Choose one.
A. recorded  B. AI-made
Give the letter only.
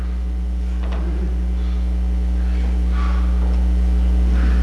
A